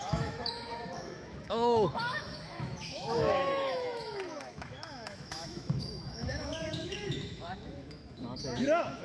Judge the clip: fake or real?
fake